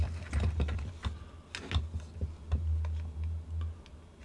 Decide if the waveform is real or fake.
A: real